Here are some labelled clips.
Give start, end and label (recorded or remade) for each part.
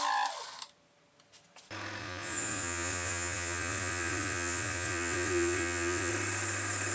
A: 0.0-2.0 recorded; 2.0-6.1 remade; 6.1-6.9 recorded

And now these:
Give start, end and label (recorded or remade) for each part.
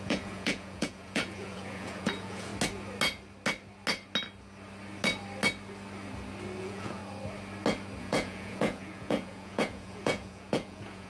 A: 0.0-2.5 remade; 2.5-6.6 recorded; 6.6-7.0 remade; 7.0-8.0 recorded; 8.0-11.1 remade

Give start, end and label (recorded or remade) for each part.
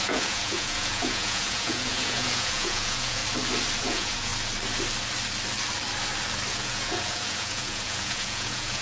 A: 0.0-3.2 remade; 3.2-3.8 recorded; 3.8-4.3 remade; 4.3-6.5 recorded; 6.5-8.8 remade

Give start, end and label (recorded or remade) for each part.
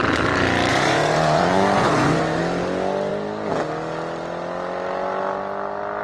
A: 0.0-0.7 recorded; 0.7-2.4 remade; 2.4-6.0 recorded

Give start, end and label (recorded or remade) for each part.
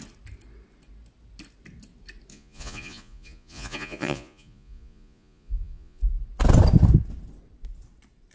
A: 0.0-2.3 recorded; 2.3-6.0 remade; 6.0-8.3 recorded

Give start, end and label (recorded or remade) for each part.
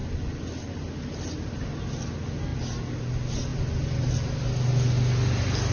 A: 0.0-5.7 recorded